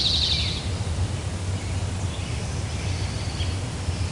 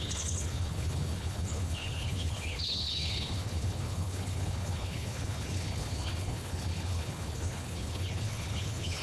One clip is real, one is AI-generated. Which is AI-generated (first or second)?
second